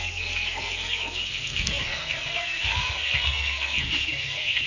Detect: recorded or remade remade